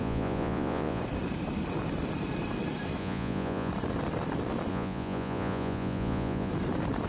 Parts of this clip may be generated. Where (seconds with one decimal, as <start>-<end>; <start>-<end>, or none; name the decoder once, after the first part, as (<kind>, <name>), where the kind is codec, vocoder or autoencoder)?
0.0-1.0 (vocoder, Vocos); 3.0-3.7; 4.7-6.5